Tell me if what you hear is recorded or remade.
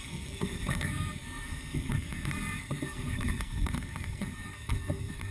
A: remade